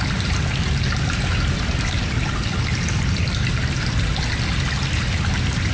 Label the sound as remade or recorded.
recorded